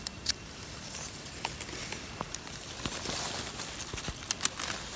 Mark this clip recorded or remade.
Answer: recorded